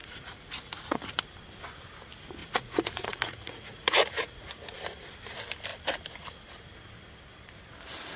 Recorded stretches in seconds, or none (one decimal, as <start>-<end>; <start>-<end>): 1.1-2.4; 4.6-8.2